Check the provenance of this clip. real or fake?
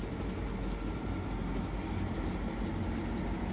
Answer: real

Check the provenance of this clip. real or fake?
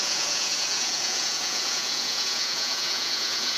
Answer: fake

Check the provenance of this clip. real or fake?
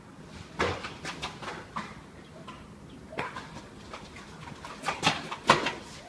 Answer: real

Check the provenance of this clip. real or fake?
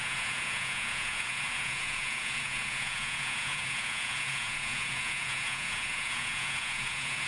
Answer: fake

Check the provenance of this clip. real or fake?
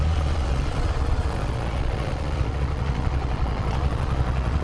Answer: fake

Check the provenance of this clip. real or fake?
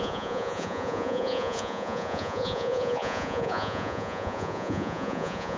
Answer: fake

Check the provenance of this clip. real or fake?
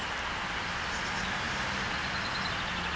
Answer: real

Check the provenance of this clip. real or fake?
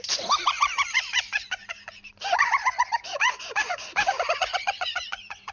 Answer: fake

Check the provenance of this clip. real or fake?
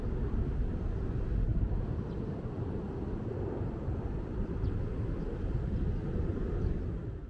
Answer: real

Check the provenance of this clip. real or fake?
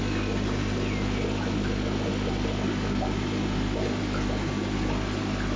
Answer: real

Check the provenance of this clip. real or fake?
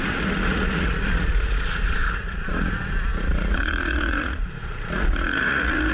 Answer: fake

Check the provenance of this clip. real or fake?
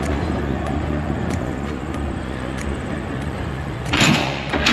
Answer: fake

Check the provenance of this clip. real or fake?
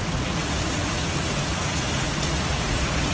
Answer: fake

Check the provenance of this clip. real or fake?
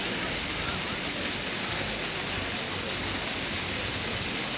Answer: real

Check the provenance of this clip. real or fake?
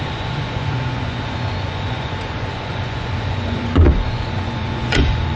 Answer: fake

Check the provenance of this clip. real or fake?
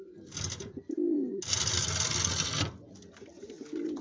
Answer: real